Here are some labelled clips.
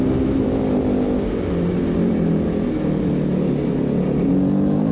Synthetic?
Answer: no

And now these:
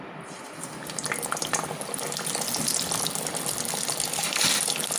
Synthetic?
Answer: no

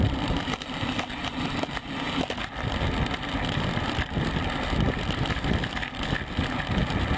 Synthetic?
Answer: no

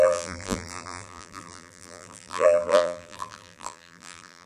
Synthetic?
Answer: yes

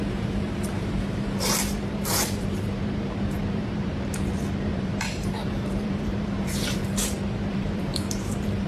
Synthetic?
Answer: yes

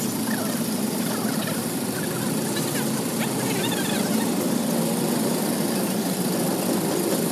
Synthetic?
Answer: yes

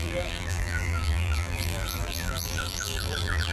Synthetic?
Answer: yes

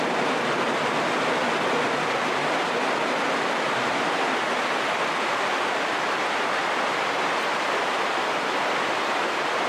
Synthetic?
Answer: no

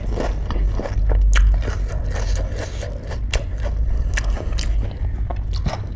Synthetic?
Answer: no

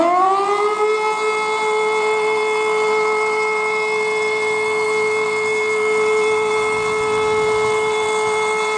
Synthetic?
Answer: yes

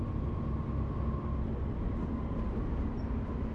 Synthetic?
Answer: no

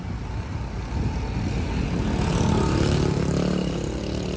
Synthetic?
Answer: no